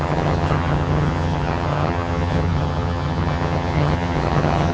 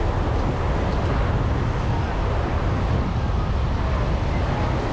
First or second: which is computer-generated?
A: first